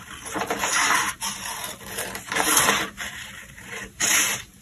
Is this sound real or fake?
fake